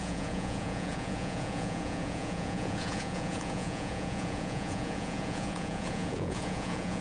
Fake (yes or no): yes